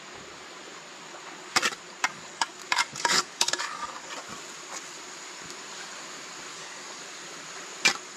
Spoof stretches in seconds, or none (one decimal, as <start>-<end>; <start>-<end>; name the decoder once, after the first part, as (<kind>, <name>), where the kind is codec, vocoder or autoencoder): 2.1-4.1 (codec, DAC); 6.5-7.0